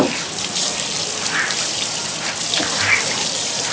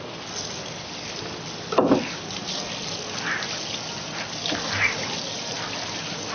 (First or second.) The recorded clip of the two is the second